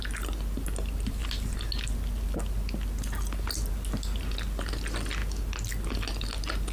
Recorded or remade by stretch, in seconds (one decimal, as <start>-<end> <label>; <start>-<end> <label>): 0.0-6.7 recorded